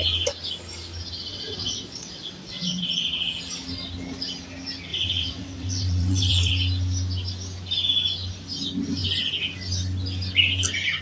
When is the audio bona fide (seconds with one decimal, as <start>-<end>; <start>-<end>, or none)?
0.0-1.3; 2.8-4.9; 6.5-11.0